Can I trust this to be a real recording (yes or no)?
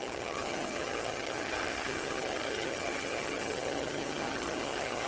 no